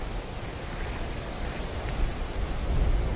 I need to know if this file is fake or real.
real